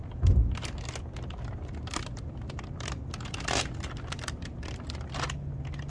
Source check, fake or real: real